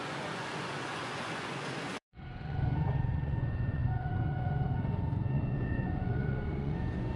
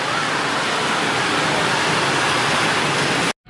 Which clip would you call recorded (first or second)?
second